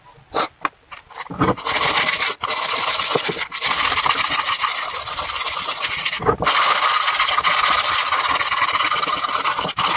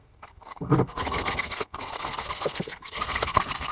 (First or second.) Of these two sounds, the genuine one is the first